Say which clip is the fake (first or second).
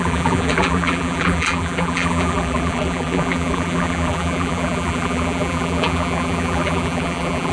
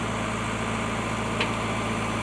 first